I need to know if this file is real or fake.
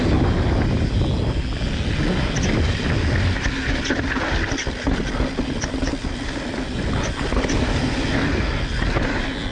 real